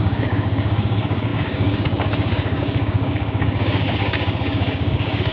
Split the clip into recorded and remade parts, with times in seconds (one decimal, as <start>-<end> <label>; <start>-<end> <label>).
0.0-5.3 remade